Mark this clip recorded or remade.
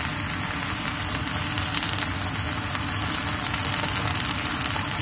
recorded